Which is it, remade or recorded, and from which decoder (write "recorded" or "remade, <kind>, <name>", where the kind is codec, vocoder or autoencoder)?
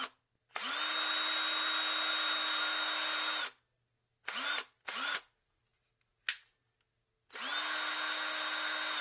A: recorded